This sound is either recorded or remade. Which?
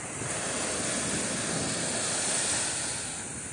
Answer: recorded